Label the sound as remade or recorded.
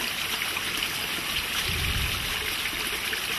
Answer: recorded